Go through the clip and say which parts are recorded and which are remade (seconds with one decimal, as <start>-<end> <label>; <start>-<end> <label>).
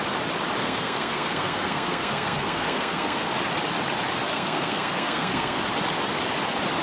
0.0-0.6 recorded; 0.6-3.3 remade; 3.3-4.3 recorded; 4.3-5.6 remade; 5.6-6.8 recorded